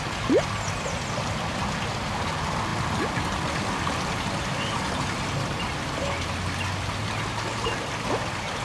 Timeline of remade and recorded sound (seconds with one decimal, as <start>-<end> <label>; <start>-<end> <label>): 0.0-8.6 recorded